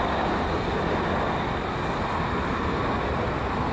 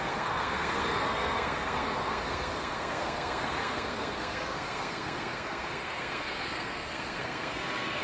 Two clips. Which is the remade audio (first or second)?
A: second